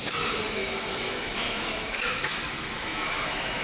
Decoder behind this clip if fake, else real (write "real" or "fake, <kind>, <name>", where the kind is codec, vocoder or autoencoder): fake, autoencoder, DAC-VAE